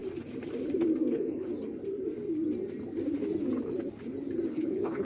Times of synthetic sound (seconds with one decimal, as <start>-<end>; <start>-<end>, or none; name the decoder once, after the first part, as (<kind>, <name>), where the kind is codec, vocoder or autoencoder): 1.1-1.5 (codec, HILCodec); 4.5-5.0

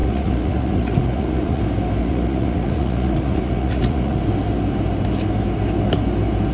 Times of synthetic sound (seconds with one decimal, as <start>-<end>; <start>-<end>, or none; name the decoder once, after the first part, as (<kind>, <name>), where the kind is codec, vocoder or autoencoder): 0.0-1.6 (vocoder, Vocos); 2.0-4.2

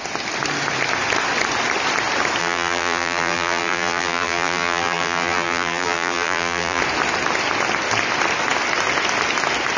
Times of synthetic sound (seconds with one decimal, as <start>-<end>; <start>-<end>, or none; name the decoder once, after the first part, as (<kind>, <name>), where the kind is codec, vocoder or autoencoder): 2.4-6.8 (vocoder, BigVGAN v2)

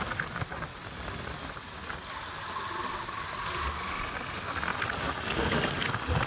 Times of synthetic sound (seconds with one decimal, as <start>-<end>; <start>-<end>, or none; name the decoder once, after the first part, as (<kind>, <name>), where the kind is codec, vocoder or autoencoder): none

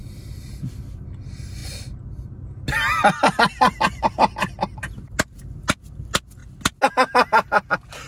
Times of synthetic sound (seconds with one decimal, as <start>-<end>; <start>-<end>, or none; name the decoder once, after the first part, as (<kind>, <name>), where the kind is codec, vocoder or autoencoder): none

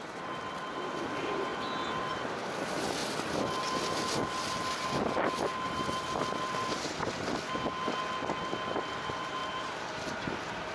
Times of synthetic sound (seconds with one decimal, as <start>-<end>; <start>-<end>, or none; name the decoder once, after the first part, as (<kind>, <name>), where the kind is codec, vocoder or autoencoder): none

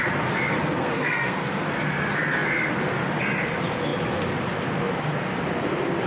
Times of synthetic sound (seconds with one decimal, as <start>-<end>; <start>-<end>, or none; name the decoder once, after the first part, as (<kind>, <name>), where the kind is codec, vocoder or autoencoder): 0.8-1.7 (codec, SNAC)

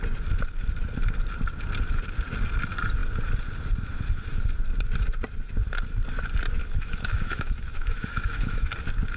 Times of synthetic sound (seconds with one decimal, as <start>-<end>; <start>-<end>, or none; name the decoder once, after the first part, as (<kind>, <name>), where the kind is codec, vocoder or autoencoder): 6.6-8.7 (autoencoder, DAC-VAE)